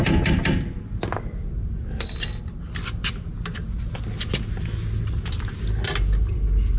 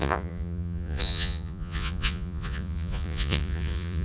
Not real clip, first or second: second